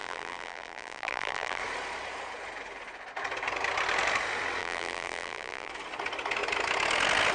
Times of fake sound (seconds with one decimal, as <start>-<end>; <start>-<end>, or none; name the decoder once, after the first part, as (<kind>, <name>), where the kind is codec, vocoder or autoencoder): 0.0-1.6 (vocoder, BigVGAN v2); 4.6-5.7